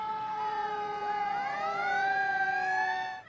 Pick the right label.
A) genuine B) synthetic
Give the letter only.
B